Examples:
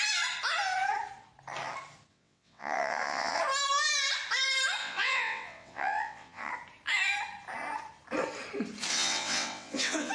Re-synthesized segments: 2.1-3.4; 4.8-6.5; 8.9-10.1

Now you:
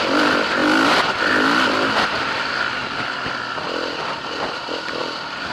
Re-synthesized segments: none

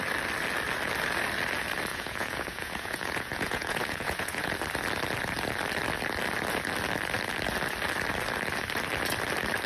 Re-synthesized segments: 1.9-4.5

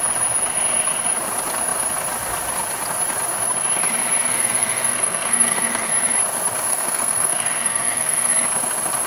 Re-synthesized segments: 4.3-5.9; 6.7-8.3

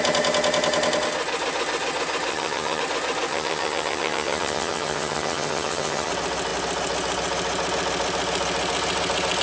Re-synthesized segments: 2.3-2.8; 3.3-6.1

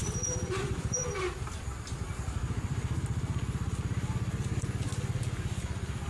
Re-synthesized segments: 0.0-3.7